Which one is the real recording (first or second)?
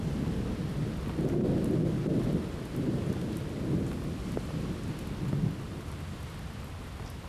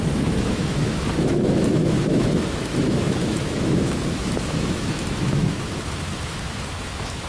first